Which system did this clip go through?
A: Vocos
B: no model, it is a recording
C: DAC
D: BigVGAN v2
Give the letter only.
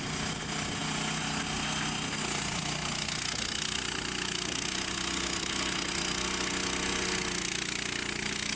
B